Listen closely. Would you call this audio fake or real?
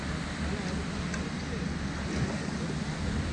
real